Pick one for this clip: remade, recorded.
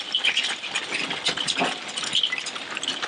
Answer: recorded